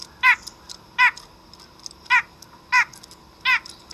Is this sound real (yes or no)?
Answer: yes